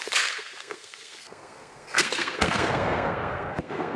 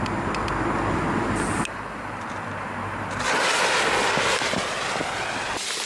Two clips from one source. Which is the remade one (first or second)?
first